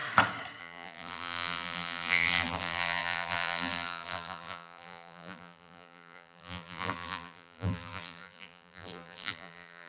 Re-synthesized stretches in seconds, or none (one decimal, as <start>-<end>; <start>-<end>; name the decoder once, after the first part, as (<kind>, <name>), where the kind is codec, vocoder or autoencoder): 0.6-9.9 (vocoder, BigVGAN v2)